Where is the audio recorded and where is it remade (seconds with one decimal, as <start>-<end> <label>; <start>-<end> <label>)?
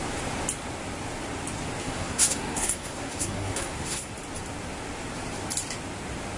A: 0.0-1.8 recorded; 1.8-4.1 remade; 4.1-6.4 recorded